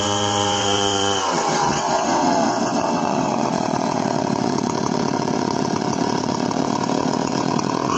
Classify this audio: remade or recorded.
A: remade